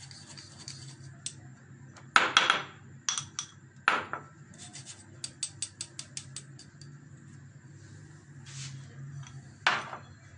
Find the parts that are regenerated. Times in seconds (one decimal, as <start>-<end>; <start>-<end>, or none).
none